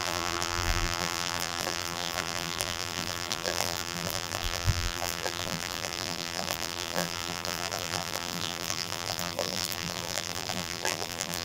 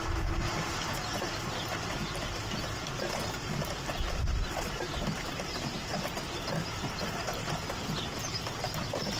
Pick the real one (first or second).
second